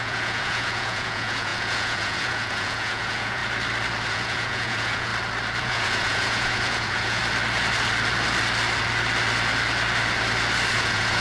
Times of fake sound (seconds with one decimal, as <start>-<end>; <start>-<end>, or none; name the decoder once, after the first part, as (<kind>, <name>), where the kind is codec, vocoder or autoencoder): 0.0-3.4 (vocoder, Vocos); 4.1-5.1; 5.6-7.2; 10.7-11.2